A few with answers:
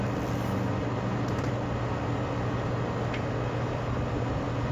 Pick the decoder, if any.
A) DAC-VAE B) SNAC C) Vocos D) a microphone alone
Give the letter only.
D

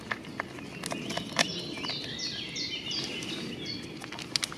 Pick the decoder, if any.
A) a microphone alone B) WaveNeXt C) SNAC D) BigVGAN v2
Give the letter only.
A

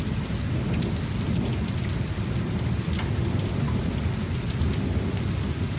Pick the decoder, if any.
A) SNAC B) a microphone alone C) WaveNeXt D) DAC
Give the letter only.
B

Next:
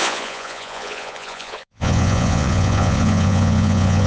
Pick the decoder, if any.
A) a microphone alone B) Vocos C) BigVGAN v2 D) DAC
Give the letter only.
B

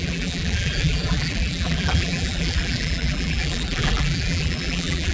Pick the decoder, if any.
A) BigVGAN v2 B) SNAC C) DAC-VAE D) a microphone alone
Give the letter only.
A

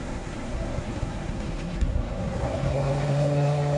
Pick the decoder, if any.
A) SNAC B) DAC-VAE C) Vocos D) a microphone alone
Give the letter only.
A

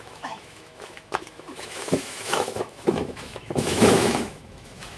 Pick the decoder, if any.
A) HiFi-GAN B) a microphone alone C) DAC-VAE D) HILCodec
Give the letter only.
C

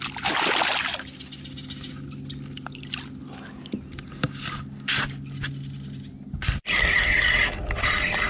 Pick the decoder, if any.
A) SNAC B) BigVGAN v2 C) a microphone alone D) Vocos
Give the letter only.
C